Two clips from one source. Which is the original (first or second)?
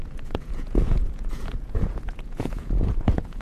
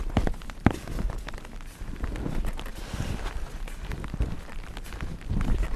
second